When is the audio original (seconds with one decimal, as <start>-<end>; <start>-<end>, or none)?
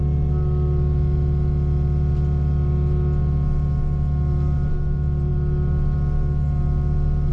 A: 0.0-7.3